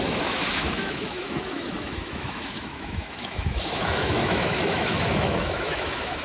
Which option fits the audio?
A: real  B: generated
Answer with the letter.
B